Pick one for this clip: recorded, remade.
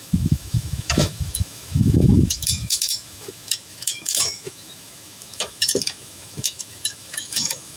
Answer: remade